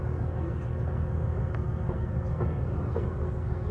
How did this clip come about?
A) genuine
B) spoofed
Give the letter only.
B